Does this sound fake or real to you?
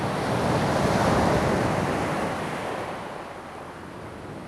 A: real